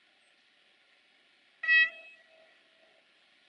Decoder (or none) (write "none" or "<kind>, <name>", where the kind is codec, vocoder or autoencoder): none